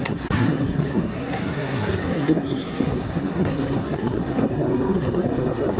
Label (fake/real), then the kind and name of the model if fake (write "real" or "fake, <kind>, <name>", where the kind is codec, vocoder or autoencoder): fake, codec, SNAC